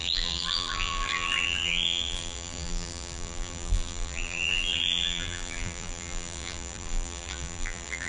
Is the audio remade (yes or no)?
yes